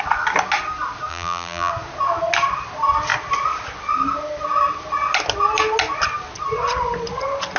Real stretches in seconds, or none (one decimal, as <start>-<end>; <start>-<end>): 0.0-1.1; 1.7-7.6

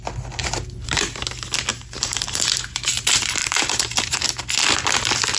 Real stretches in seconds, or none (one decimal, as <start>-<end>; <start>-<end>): 0.0-0.4; 1.0-1.7; 2.5-3.4; 4.2-5.4

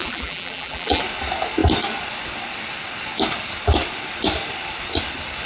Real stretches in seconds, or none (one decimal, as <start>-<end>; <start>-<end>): 1.0-5.5

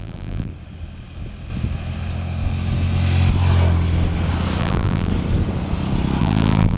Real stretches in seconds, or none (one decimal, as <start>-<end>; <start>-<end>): 0.5-4.6; 5.1-6.2

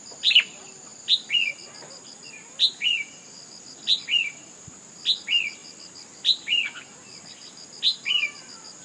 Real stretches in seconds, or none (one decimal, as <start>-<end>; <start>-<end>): 0.0-8.8

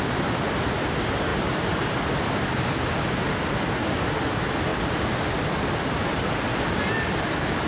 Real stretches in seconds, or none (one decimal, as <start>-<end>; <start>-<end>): 0.0-7.7

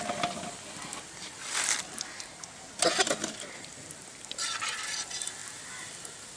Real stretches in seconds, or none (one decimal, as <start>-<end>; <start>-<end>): 0.0-6.4